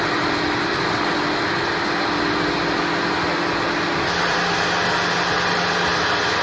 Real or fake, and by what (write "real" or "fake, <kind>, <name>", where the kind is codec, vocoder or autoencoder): real